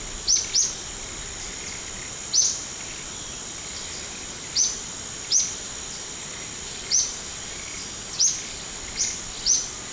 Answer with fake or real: real